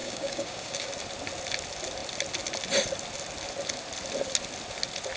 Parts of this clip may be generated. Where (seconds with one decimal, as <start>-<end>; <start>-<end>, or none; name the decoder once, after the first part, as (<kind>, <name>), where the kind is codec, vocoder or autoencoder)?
0.0-0.9 (codec, DAC)